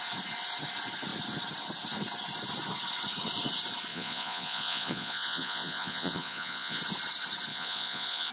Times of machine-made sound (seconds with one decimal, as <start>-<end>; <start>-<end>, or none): 3.9-6.8; 7.5-8.3